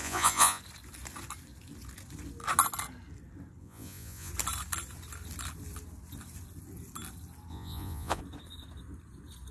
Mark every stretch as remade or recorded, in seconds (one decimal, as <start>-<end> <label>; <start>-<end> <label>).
0.0-0.6 remade; 0.6-3.6 recorded; 3.6-4.3 remade; 4.3-7.5 recorded; 7.5-8.2 remade; 8.2-9.5 recorded